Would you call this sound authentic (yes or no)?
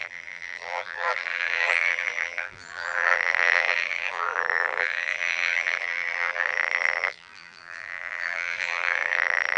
no